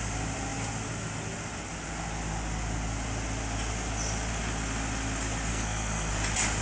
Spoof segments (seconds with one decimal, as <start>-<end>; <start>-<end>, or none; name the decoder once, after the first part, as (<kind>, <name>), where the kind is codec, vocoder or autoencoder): 5.5-6.1 (codec, SNAC)